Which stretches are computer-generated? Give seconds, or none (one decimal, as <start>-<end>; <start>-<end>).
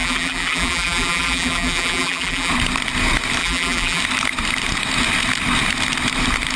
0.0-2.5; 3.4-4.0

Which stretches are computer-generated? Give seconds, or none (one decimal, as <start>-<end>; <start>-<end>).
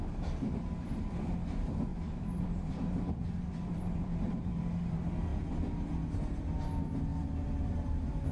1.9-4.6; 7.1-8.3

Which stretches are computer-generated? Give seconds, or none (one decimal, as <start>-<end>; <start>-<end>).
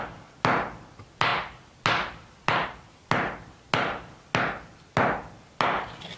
none